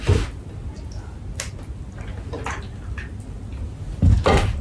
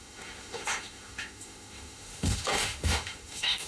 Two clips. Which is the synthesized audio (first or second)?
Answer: second